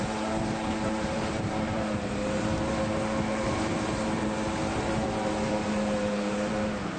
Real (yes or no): no